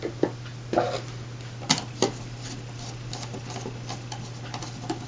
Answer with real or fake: real